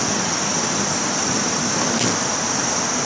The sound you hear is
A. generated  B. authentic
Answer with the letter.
B